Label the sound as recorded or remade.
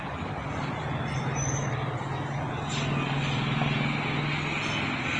recorded